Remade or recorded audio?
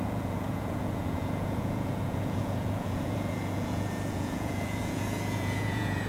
remade